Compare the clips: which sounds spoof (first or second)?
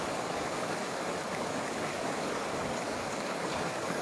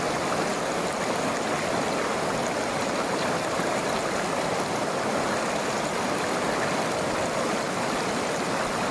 first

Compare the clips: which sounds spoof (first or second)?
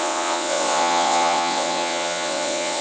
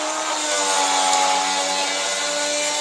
first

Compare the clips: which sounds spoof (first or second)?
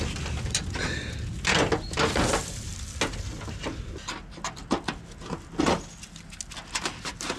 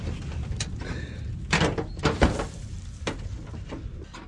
second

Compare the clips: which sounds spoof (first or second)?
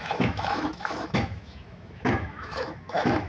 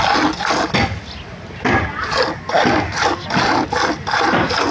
first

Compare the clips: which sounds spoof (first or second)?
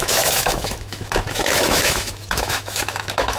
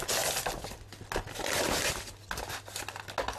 first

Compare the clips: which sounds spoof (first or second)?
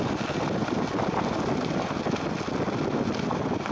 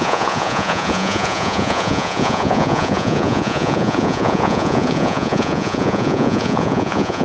second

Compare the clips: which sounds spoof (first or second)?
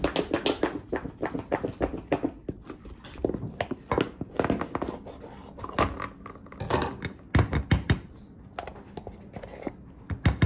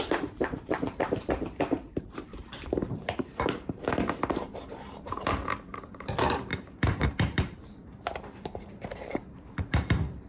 second